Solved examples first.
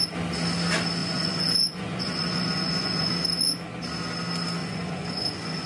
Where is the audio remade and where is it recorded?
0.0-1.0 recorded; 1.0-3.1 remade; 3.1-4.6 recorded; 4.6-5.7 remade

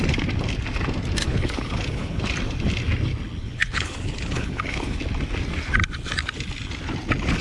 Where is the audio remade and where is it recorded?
0.0-1.2 recorded; 1.2-2.2 remade; 2.2-3.4 recorded; 3.4-5.0 remade; 5.0-7.4 recorded

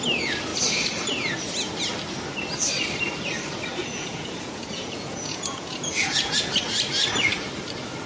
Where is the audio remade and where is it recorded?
0.0-3.8 recorded; 3.8-6.5 remade; 6.5-8.1 recorded

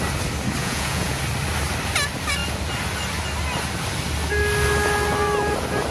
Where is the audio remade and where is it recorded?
0.0-0.6 recorded; 0.6-1.2 remade; 1.2-5.9 recorded

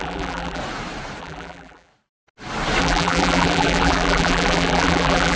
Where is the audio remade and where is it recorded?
0.0-0.6 remade; 0.6-1.2 recorded; 1.2-1.9 remade; 1.9-2.8 recorded; 2.8-5.4 remade